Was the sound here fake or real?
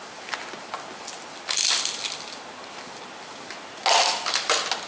real